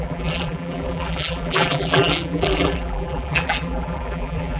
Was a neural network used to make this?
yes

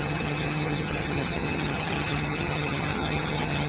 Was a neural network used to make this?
yes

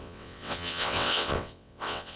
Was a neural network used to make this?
yes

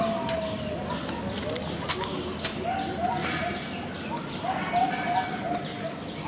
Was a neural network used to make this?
no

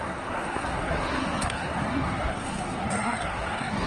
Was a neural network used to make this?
yes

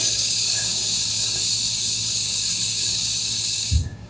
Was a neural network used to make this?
yes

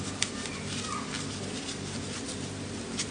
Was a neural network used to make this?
no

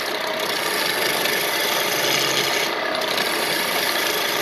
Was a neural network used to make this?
no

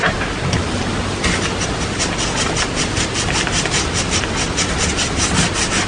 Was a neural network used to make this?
no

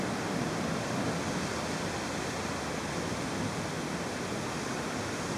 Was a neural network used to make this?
no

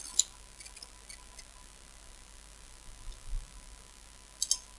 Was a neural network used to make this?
no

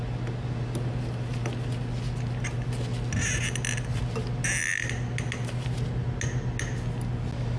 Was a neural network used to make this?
no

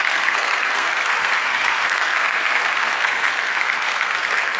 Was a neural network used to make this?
yes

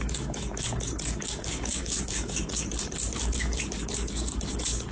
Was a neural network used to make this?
yes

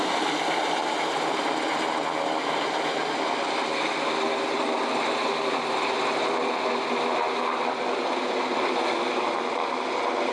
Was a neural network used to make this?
no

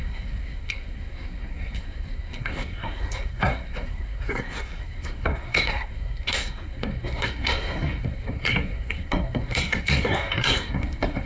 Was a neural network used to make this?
yes